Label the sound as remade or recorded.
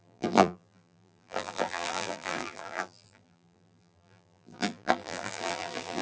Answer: remade